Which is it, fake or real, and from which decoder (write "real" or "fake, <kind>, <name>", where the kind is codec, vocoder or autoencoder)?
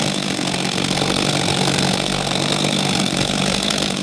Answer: fake, codec, SNAC